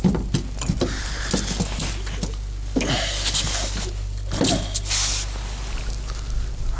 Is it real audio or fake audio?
real